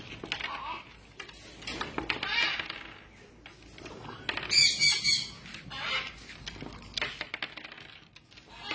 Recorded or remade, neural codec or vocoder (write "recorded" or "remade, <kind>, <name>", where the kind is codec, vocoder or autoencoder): recorded